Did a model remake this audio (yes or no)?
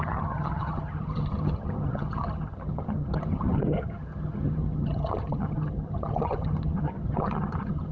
yes